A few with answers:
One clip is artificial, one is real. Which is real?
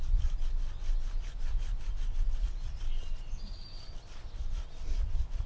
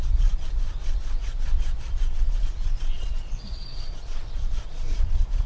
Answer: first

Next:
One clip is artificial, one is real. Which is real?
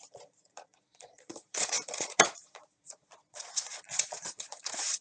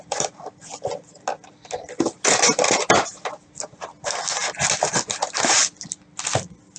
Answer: second